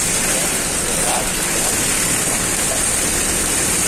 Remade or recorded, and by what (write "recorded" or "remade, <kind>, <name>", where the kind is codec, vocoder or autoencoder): recorded